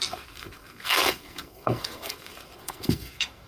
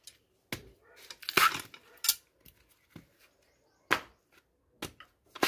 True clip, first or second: second